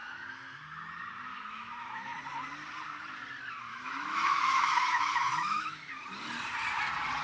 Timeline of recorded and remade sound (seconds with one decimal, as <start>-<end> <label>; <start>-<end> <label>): 0.0-0.6 remade; 0.6-1.3 recorded; 1.3-2.2 remade; 2.2-3.7 recorded; 3.7-5.9 remade; 5.9-7.2 recorded